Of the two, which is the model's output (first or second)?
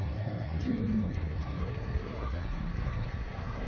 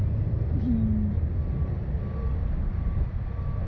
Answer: first